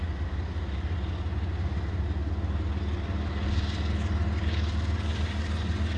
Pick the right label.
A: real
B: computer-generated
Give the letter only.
A